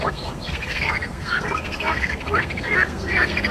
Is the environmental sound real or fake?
fake